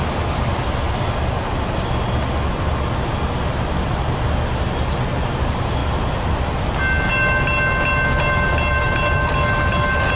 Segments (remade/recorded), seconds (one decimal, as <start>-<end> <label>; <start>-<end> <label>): 0.0-10.2 recorded